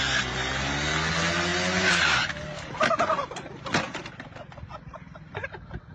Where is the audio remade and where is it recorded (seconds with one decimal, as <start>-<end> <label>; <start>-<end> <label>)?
0.0-5.9 recorded